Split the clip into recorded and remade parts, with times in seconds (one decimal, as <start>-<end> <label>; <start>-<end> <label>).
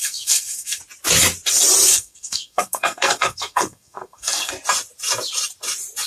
0.0-0.8 remade; 0.8-1.9 recorded; 1.9-4.5 remade; 4.5-6.1 recorded